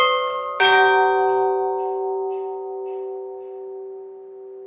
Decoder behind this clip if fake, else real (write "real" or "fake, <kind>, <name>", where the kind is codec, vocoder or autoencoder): real